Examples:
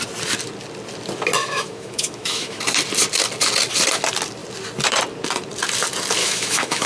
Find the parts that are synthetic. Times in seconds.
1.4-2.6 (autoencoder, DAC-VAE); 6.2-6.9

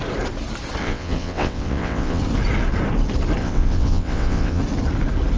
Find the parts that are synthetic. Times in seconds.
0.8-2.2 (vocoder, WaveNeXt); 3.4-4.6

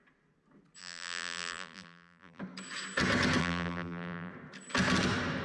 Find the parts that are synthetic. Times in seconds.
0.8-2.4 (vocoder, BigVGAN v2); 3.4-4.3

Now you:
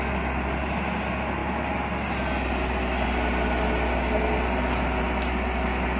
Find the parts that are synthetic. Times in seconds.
none

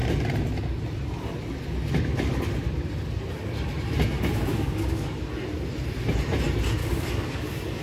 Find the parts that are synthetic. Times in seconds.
4.5-5.3 (codec, DAC); 6.8-7.8

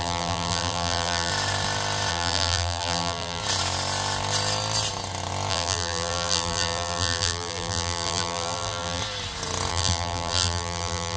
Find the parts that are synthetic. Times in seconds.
0.0-1.3 (vocoder, BigVGAN v2); 2.1-3.4; 5.5-9.0; 9.7-11.2

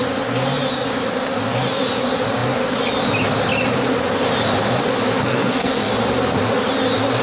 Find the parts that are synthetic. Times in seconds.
5.2-5.9 (codec, SNAC)